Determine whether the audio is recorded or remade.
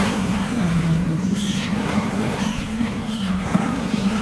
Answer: remade